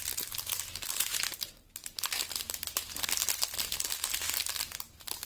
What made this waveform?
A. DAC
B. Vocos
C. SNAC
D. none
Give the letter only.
D